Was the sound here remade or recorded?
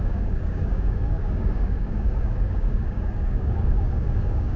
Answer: remade